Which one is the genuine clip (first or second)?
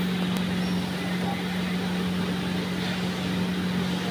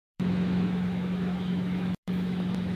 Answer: first